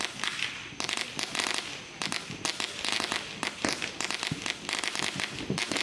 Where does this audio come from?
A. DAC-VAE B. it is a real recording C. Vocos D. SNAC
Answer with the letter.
B